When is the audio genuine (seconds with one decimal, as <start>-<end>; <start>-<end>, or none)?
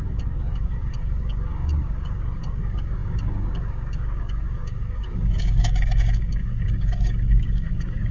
none